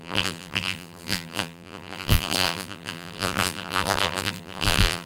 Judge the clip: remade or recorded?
remade